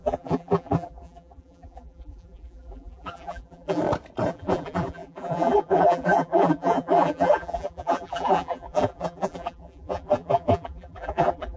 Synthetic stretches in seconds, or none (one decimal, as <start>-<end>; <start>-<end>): 0.0-3.8; 4.3-11.6